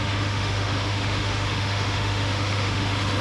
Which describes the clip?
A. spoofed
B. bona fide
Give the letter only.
A